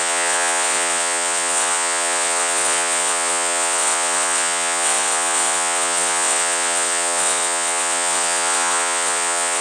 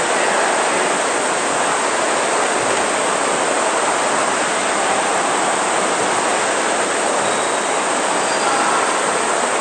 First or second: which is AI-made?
first